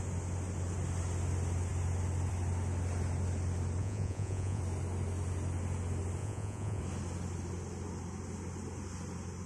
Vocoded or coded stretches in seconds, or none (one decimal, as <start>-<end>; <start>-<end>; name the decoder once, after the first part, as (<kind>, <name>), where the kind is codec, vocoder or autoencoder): 3.8-4.6 (vocoder, Vocos); 6.2-6.8